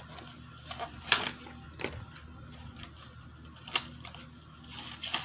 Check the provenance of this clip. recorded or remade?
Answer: recorded